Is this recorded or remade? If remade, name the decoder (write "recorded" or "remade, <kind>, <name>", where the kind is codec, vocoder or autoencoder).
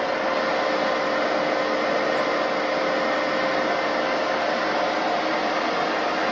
recorded